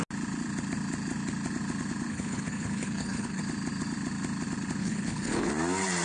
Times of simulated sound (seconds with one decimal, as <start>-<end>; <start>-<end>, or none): 2.1-3.4; 4.8-5.5